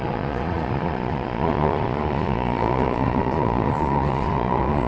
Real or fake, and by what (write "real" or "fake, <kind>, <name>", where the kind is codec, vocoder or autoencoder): fake, vocoder, Vocos